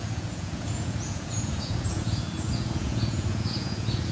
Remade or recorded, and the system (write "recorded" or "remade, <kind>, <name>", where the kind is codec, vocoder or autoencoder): remade, vocoder, Vocos